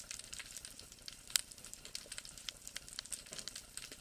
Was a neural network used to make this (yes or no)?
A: no